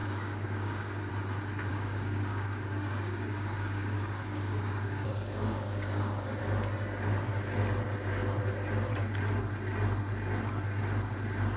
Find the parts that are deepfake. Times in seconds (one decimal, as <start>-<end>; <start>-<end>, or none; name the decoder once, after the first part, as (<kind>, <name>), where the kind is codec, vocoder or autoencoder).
0.0-1.1 (codec, DAC); 1.7-6.4